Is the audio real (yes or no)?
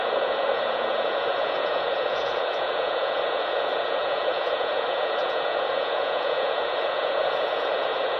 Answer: no